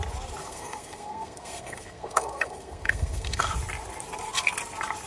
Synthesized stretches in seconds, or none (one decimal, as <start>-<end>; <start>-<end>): 0.4-3.5